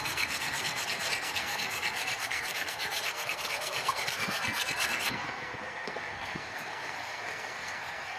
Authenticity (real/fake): fake